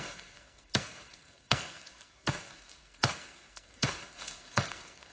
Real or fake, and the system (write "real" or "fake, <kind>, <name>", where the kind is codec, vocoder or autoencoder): fake, codec, SNAC